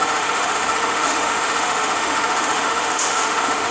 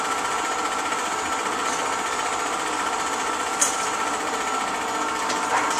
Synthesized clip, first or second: first